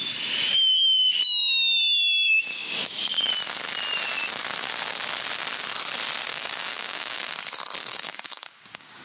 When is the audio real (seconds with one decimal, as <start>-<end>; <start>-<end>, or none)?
0.0-2.5; 3.3-6.3; 7.2-7.8